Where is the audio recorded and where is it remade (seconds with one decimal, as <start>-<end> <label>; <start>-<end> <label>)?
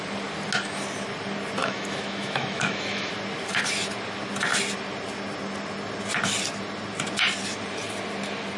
0.0-1.6 recorded; 1.6-3.1 remade; 3.1-8.6 recorded